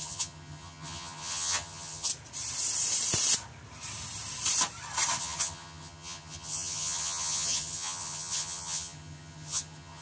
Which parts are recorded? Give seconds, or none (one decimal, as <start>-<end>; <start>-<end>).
2.1-5.2

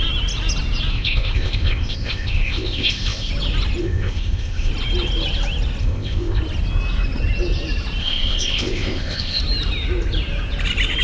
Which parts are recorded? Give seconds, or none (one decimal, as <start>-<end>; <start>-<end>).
0.0-0.9; 3.3-3.8; 4.7-5.8; 6.4-8.0; 9.4-11.0

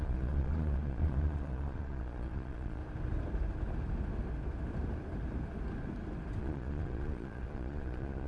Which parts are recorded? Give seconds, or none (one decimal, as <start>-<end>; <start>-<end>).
2.8-6.4

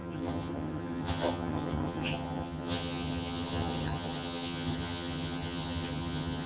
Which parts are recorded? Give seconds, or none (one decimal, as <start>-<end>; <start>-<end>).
none

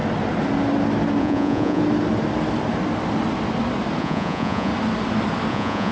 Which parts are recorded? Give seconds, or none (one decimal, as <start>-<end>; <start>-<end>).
0.0-1.2; 1.8-4.0; 4.7-5.5

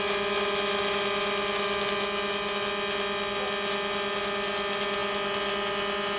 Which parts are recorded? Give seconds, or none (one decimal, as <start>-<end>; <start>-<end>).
0.0-6.2

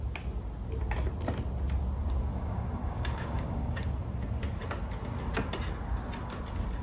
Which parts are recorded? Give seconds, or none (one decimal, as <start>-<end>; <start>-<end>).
0.0-2.3; 3.9-6.8

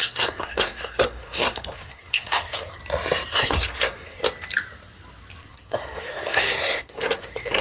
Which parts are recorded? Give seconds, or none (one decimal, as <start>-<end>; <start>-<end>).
2.8-3.3; 4.2-5.4